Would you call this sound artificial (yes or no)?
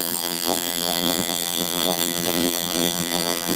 yes